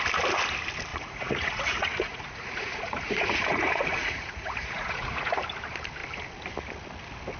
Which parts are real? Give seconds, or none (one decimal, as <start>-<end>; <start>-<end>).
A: 0.0-0.9; 5.3-7.4